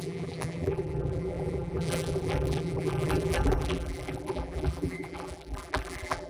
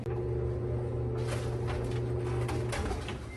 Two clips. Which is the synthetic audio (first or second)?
first